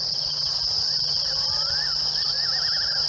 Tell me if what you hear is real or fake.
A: real